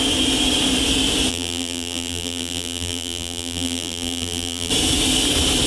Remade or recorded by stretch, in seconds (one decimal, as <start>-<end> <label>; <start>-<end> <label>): 0.0-1.3 recorded; 1.3-4.7 remade; 4.7-5.7 recorded

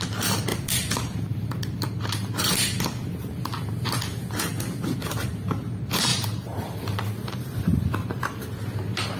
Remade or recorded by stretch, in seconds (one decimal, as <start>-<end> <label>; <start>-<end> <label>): 0.0-0.5 recorded; 0.5-1.6 remade; 1.6-6.1 recorded; 6.1-8.6 remade; 8.6-9.2 recorded

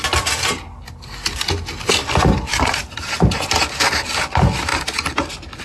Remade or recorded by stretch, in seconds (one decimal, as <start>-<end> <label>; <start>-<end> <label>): 0.0-2.5 recorded; 2.5-3.4 remade; 3.4-4.7 recorded; 4.7-5.6 remade

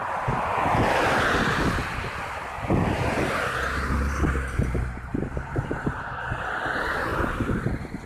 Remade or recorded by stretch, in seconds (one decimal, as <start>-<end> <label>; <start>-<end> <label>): 0.0-5.1 recorded; 5.1-6.5 remade; 6.5-7.1 recorded; 7.1-7.6 remade; 7.6-8.1 recorded

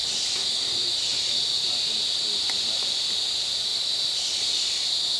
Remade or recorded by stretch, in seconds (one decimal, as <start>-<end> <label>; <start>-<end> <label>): 0.0-3.7 recorded; 3.7-4.3 remade; 4.3-5.2 recorded

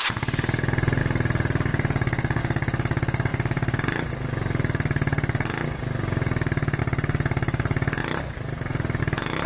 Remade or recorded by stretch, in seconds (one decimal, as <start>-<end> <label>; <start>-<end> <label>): 0.0-1.0 remade; 1.0-3.3 recorded; 3.3-6.8 remade; 6.8-8.0 recorded; 8.0-9.0 remade; 9.0-9.5 recorded

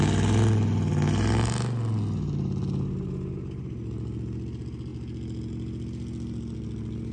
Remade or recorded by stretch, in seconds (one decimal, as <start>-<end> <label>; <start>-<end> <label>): 0.0-7.1 recorded

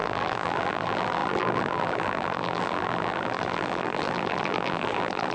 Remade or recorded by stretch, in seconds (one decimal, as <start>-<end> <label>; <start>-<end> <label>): 0.0-5.3 remade